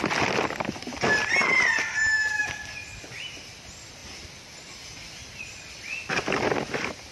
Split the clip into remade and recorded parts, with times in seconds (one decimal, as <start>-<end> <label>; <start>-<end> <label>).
0.0-7.1 recorded